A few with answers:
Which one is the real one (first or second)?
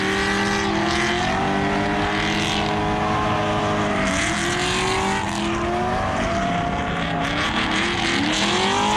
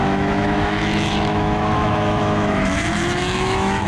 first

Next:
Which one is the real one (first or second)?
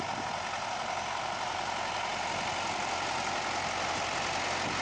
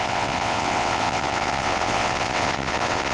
first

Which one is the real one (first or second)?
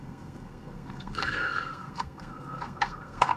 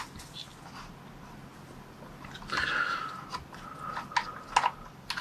second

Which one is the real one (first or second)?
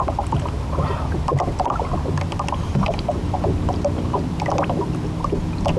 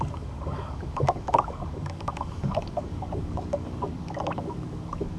first